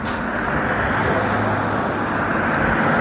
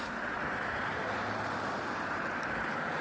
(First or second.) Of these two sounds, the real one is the first